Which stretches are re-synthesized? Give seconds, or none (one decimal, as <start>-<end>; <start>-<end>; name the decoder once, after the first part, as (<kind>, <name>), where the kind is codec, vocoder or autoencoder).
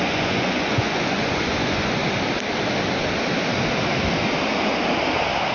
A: 0.0-2.0 (vocoder, Vocos)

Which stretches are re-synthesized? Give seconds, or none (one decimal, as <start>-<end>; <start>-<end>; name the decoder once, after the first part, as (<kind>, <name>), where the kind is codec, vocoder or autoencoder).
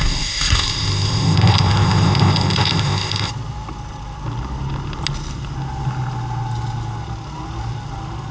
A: 0.0-3.3 (codec, ZipCodec)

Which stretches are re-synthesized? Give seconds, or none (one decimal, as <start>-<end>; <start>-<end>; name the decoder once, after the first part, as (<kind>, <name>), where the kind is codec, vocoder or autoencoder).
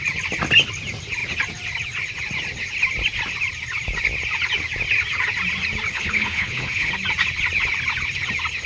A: 5.9-6.9 (codec, HILCodec)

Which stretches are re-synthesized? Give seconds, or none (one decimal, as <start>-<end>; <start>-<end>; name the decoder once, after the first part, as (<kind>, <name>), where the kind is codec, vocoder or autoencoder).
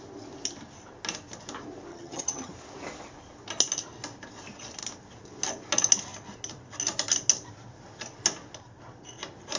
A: 1.9-2.5 (vocoder, HiFi-GAN)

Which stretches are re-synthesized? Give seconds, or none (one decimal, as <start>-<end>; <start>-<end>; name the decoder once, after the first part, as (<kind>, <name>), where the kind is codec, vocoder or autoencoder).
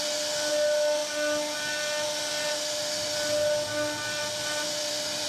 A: none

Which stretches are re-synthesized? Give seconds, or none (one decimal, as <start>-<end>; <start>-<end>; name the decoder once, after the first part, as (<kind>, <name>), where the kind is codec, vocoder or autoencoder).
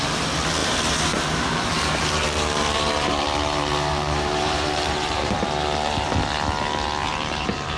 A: 0.6-5.3 (vocoder, BigVGAN v2); 7.0-7.8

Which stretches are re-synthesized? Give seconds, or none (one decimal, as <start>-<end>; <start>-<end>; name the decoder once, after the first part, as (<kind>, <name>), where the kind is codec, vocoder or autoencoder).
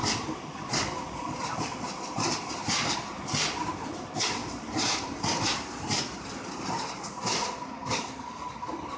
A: 0.0-2.9 (vocoder, BigVGAN v2); 4.4-6.4